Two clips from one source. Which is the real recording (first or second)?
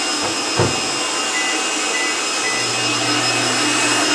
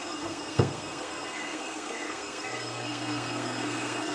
first